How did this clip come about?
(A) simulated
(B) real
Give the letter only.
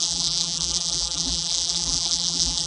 A